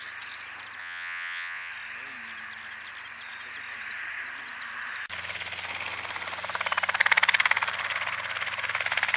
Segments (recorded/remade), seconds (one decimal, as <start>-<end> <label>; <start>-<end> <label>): 0.0-0.8 recorded; 0.8-1.7 remade; 1.7-9.2 recorded